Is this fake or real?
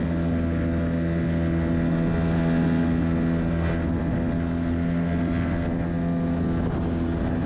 real